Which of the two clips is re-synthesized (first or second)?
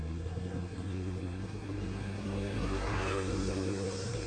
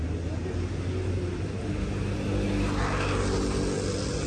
first